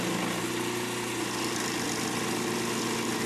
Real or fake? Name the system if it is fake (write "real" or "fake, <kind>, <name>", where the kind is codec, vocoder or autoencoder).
real